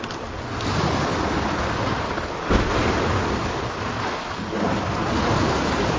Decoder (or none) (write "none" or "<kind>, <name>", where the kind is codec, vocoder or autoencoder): none